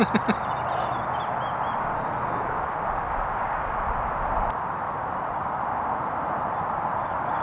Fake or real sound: real